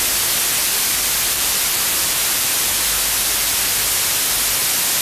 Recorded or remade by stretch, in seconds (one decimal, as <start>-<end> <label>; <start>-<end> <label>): 0.0-0.6 recorded; 0.6-3.6 remade; 3.6-5.0 recorded